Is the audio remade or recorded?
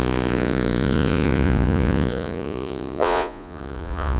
remade